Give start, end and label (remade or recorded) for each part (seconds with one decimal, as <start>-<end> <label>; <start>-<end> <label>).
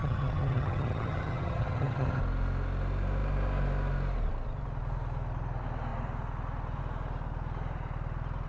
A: 0.0-2.2 remade; 2.2-8.5 recorded